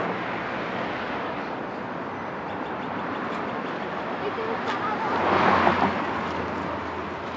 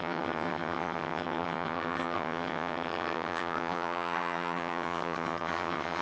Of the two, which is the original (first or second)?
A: first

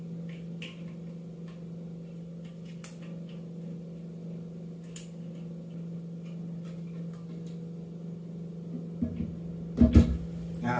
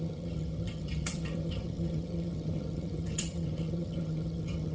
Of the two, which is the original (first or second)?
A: first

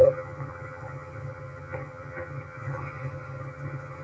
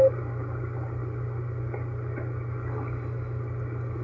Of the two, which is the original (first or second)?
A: second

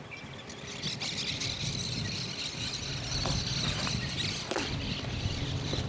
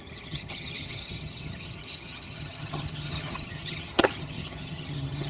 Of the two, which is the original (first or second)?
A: first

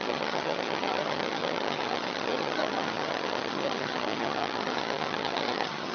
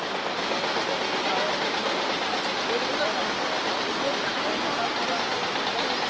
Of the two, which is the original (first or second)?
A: second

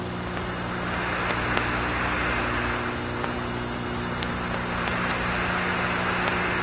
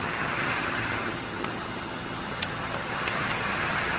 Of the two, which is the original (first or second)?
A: first